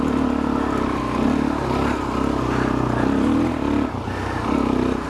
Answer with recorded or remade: recorded